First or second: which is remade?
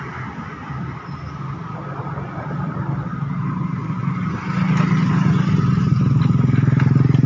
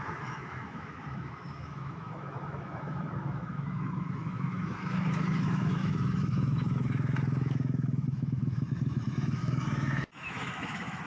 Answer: second